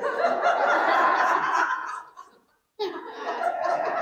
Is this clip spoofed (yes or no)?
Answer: yes